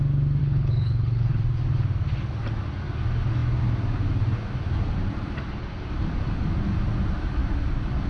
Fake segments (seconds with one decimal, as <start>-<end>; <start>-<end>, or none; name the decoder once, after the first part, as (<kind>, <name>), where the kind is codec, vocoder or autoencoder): 0.4-1.3 (codec, HILCodec)

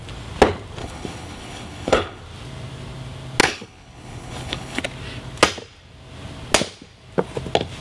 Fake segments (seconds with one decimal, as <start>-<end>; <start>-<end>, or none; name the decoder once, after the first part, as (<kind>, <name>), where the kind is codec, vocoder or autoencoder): 0.8-2.2 (codec, HILCodec); 3.4-4.8

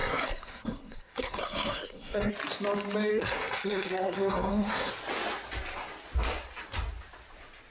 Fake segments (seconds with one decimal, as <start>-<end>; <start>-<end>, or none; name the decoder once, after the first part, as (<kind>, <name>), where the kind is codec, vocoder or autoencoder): 0.0-2.3 (codec, SNAC); 3.1-4.9

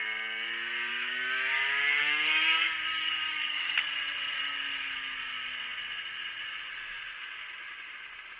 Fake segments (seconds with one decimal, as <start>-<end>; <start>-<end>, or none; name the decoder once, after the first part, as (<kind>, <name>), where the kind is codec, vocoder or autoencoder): 0.9-1.6 (codec, DAC); 2.0-3.9

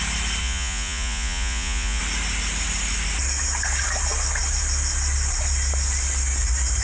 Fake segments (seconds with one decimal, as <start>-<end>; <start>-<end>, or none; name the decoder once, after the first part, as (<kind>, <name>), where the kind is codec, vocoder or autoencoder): 0.4-2.0 (vocoder, Vocos)

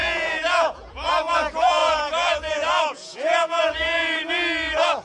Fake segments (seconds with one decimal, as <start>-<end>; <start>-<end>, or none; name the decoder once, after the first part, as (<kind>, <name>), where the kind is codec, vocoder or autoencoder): 0.0-1.1 (vocoder, Vocos); 1.8-4.3